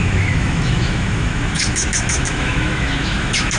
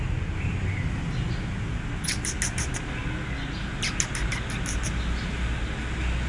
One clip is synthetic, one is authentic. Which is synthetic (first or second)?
first